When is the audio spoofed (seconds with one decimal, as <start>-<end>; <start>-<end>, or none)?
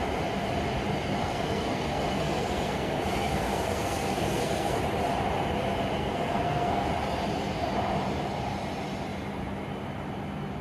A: 1.2-4.8; 6.0-6.9